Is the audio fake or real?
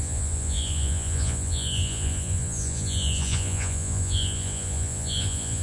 fake